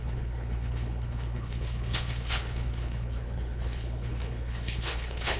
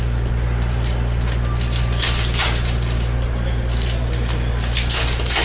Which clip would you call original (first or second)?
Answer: second